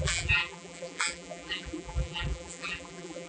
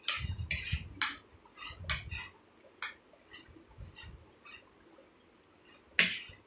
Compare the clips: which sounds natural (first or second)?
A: second